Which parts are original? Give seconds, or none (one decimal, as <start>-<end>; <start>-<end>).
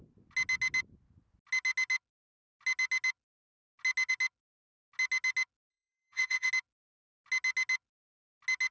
0.0-5.7; 6.5-8.7